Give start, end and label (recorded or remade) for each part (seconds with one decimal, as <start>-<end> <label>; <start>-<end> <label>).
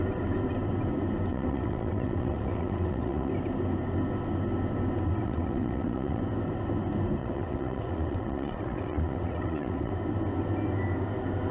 0.0-1.3 recorded; 1.3-3.3 remade; 3.3-5.2 recorded; 5.2-6.2 remade; 6.2-7.2 recorded; 7.2-9.9 remade; 9.9-11.5 recorded